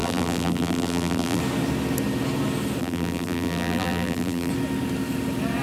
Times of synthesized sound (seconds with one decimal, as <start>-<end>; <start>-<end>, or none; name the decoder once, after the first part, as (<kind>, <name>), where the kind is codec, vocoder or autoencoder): 0.0-1.4 (vocoder, BigVGAN v2); 2.8-4.5